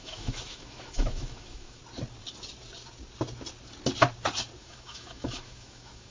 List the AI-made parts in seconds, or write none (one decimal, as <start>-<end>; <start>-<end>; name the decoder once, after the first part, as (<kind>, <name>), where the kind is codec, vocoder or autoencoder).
0.0-1.8 (autoencoder, DAC-VAE); 4.6-6.1